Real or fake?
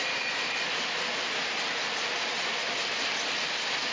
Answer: real